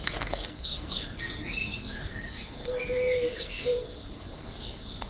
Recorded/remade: remade